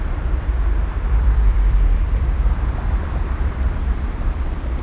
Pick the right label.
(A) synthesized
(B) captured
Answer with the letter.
A